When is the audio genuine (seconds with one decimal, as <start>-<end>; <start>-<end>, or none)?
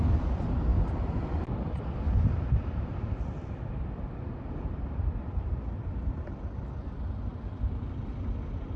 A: none